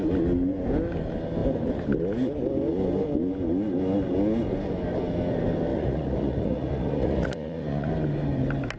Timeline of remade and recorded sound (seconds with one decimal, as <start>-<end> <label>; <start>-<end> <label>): 0.0-5.7 recorded; 5.7-7.9 remade; 7.9-8.8 recorded